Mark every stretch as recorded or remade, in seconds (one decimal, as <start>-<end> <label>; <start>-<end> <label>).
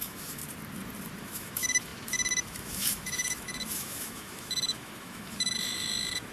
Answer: 0.0-0.4 remade; 0.4-1.2 recorded; 1.2-6.3 remade